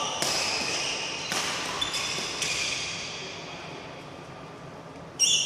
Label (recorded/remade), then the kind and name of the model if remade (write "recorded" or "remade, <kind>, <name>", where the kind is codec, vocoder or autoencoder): recorded